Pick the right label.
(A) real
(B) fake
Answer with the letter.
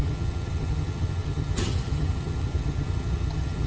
B